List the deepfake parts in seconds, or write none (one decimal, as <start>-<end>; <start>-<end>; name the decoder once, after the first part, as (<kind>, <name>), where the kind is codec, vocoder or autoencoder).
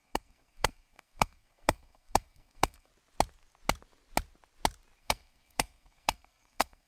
0.0-2.9 (codec, SNAC); 5.0-6.9